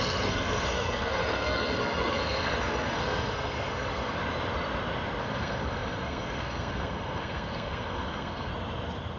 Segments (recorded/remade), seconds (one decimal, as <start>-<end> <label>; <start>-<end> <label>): 0.0-4.2 remade; 4.2-5.2 recorded; 5.2-8.5 remade; 8.5-9.2 recorded